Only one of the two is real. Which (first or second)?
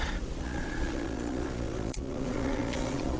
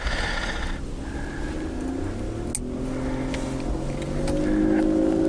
second